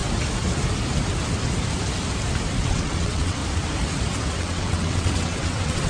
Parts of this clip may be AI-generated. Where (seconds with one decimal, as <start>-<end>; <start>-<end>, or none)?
2.6-3.4; 4.4-5.9